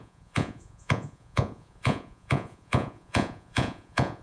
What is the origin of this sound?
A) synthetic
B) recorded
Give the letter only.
A